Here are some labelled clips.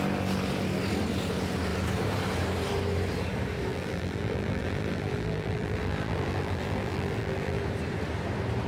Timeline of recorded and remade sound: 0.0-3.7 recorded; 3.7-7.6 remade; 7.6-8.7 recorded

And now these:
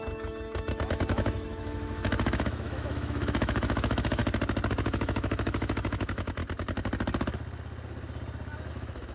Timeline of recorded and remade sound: 0.0-4.2 remade; 4.2-4.7 recorded; 4.7-6.4 remade; 6.4-8.7 recorded; 8.7-9.1 remade

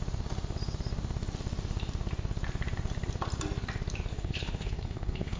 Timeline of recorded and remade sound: 0.0-4.1 recorded; 4.1-5.4 remade

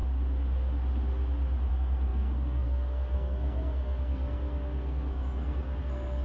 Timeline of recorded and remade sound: 0.0-1.7 recorded; 1.7-6.2 remade